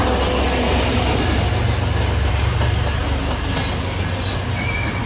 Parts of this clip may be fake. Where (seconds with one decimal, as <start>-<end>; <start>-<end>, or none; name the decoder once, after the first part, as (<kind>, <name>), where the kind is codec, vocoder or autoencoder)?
none